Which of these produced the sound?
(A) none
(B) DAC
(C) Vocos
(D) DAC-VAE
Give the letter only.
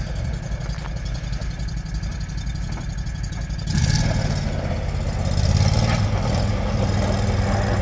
A